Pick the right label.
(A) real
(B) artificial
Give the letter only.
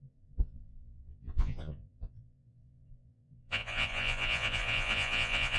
B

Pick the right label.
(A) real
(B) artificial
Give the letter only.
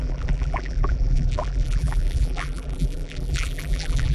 B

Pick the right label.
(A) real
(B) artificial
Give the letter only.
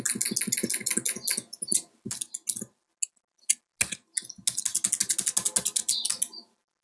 A